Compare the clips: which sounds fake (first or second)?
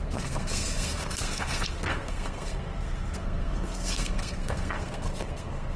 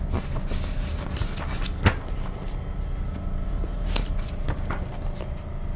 first